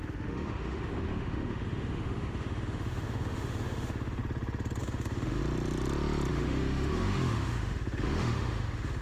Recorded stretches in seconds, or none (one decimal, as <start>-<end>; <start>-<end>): 4.2-4.8; 5.4-6.3